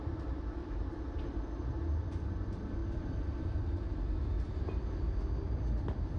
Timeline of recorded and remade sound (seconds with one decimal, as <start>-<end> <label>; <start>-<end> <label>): 0.0-6.2 remade